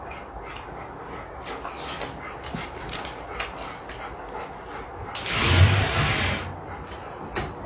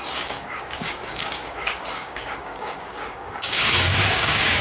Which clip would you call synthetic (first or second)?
second